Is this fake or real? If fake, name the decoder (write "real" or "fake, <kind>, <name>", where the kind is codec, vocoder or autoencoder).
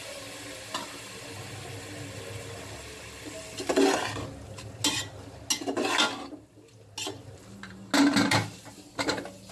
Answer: real